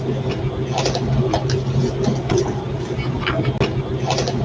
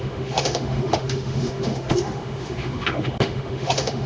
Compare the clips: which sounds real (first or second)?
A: first